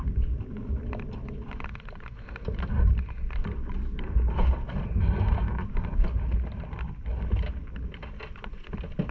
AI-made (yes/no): no